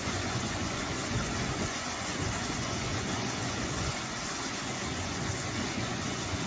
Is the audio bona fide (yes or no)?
no